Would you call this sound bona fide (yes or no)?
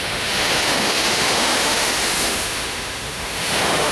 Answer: no